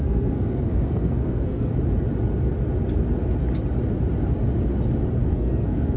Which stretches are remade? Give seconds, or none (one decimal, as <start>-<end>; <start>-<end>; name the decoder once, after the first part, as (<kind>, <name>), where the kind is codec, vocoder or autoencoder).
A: 0.0-1.7 (codec, SNAC); 5.3-6.0